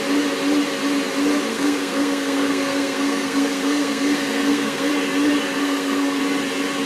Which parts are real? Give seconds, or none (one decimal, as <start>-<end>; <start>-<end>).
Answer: 0.0-1.5; 4.9-5.6; 6.2-6.9